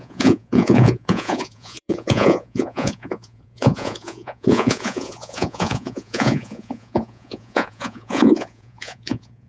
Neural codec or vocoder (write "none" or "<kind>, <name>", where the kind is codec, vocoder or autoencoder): vocoder, Vocos